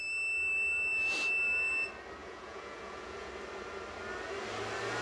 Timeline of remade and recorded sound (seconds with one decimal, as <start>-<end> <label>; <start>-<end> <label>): 0.0-2.2 recorded; 2.2-3.3 remade; 3.3-5.0 recorded